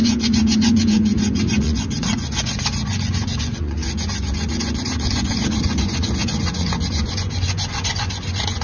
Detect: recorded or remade remade